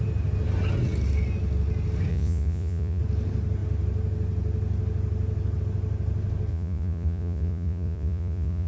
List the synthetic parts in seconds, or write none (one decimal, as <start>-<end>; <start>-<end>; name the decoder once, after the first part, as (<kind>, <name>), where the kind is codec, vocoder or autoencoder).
2.1-3.0 (vocoder, Vocos); 6.5-8.7